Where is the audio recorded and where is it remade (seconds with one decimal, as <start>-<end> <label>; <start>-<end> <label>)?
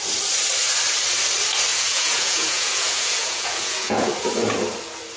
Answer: 0.0-1.7 recorded; 1.7-4.1 remade; 4.1-5.2 recorded